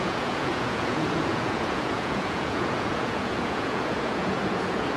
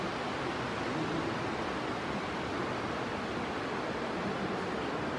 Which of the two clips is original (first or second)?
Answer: second